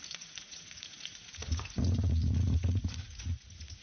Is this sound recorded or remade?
remade